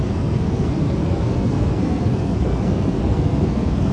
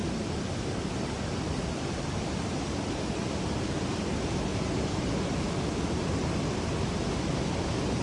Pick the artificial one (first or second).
first